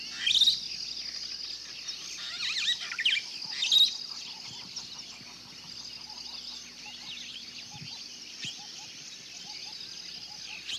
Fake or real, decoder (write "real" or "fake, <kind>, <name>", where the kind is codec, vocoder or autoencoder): real